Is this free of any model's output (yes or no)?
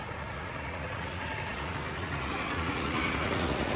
no